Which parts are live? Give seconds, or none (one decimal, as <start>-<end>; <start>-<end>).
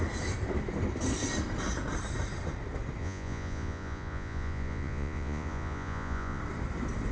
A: 0.0-3.0; 6.4-7.1